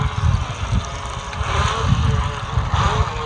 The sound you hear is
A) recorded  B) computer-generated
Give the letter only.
A